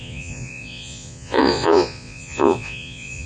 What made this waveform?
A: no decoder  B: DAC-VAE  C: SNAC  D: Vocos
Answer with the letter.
D